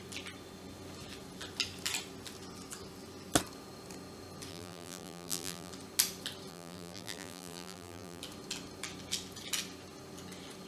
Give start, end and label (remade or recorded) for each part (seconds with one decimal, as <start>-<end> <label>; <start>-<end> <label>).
0.0-4.5 recorded; 4.5-5.7 remade; 5.7-6.5 recorded; 6.5-8.2 remade; 8.2-10.7 recorded